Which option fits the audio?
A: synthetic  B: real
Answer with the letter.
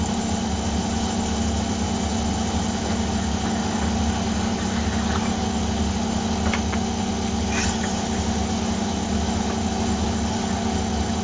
B